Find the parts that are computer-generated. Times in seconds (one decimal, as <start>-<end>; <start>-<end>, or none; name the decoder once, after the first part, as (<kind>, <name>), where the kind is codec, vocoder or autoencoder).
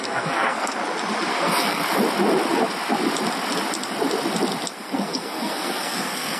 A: 0.0-0.8 (codec, SNAC); 1.3-1.8; 4.7-6.4